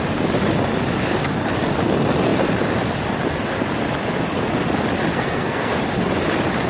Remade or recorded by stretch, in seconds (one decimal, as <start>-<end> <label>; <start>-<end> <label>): 0.0-5.1 recorded; 5.1-5.8 remade; 5.8-6.7 recorded